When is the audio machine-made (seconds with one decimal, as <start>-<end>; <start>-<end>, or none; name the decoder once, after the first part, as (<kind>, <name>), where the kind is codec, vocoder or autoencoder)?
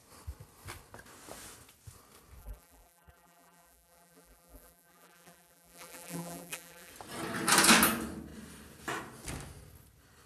2.4-6.9 (vocoder, BigVGAN v2)